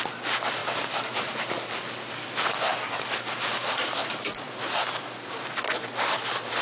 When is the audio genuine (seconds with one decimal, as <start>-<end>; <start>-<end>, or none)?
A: 0.0-0.6; 1.7-2.7; 5.7-6.6